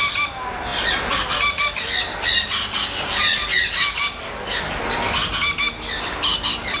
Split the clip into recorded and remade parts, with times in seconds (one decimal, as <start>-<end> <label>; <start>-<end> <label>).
0.0-6.8 recorded